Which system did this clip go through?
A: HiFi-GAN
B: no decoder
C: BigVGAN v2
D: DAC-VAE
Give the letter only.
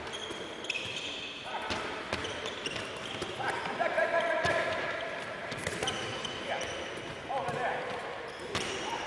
C